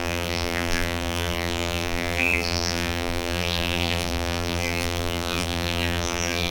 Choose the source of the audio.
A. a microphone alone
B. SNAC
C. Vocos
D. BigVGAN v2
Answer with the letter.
D